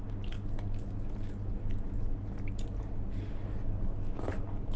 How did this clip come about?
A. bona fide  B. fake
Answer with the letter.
A